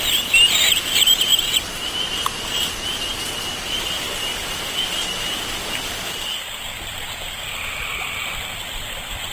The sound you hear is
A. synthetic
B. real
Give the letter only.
B